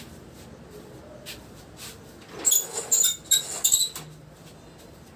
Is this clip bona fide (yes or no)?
yes